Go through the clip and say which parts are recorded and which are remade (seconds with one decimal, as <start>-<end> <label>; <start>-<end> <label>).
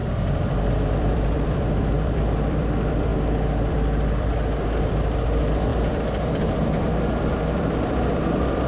0.0-3.1 remade; 3.1-3.7 recorded; 3.7-8.7 remade